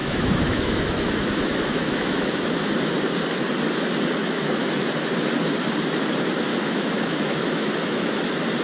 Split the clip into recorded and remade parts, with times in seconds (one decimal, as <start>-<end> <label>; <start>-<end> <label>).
0.0-2.6 remade; 2.6-4.2 recorded; 4.2-4.9 remade; 4.9-6.5 recorded; 6.5-8.2 remade; 8.2-8.6 recorded